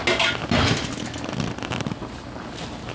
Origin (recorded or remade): recorded